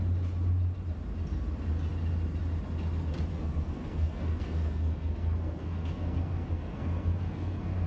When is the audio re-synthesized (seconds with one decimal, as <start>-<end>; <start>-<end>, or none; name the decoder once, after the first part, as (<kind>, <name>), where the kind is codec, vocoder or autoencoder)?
3.3-7.9 (codec, SNAC)